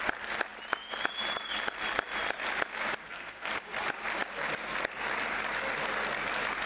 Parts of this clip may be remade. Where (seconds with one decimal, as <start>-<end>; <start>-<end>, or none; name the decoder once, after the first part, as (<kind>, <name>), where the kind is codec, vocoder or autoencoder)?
3.0-3.5 (codec, SNAC)